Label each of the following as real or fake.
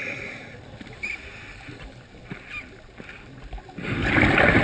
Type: real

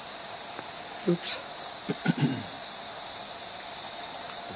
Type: real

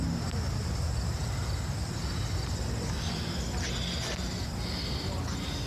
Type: real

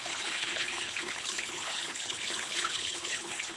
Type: fake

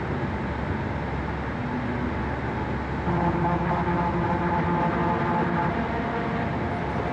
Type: real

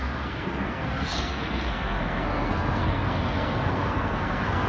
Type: fake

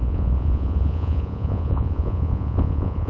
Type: fake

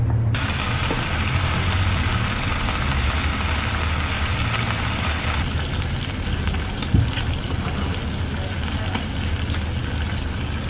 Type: real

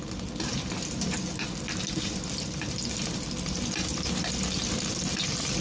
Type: real